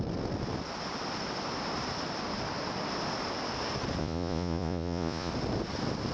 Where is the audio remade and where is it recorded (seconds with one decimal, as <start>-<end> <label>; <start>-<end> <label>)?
0.0-4.0 recorded; 4.0-5.3 remade; 5.3-6.1 recorded

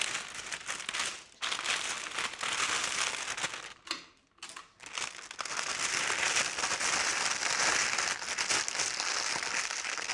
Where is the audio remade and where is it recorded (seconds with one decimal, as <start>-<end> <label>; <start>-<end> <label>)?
0.0-10.1 recorded

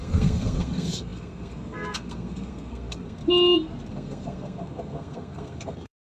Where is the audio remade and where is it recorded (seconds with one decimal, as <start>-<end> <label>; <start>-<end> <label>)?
0.0-3.2 remade; 3.2-3.9 recorded; 3.9-6.1 remade

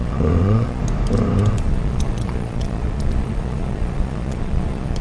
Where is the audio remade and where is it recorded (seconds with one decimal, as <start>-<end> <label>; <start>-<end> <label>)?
0.0-0.8 remade; 0.8-1.5 recorded; 1.5-5.0 remade